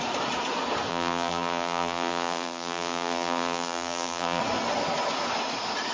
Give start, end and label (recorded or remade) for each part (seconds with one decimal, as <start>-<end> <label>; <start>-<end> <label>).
0.0-0.9 recorded; 0.9-4.4 remade; 4.4-5.9 recorded